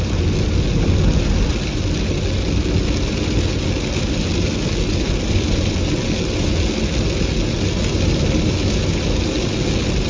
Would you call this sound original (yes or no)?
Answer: yes